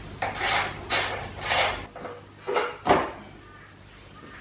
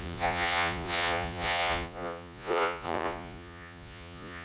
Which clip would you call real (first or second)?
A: first